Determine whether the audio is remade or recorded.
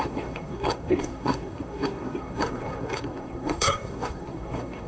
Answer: remade